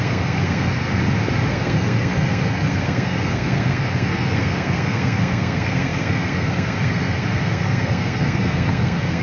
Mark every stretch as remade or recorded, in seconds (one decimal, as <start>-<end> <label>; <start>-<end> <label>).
0.0-1.0 remade; 1.0-1.5 recorded; 1.5-9.2 remade

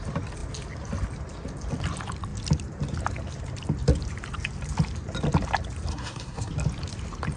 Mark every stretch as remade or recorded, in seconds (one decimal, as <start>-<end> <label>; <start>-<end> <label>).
0.0-5.9 recorded; 5.9-6.5 remade; 6.5-7.4 recorded